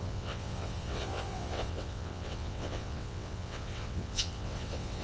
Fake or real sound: fake